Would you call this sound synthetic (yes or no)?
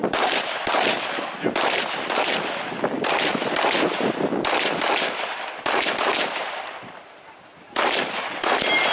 yes